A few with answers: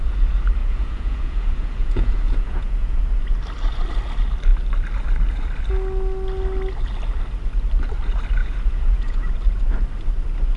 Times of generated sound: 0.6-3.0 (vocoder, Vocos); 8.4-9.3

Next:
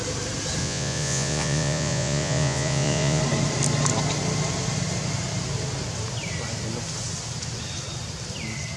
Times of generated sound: 0.6-3.2 (vocoder, Vocos)

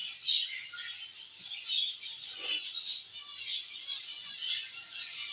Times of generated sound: 1.4-5.3 (vocoder, Vocos)

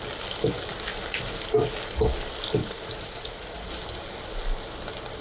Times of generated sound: 2.6-3.7 (vocoder, Vocos)

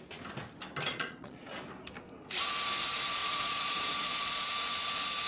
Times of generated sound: 0.9-1.5 (vocoder, Vocos); 3.2-4.5

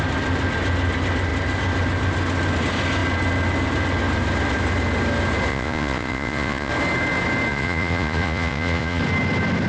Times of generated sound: 5.5-6.7 (vocoder, Vocos); 7.5-9.0